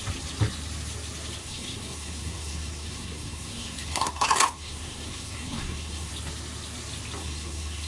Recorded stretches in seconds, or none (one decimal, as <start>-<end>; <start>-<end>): 0.0-1.4; 6.1-7.2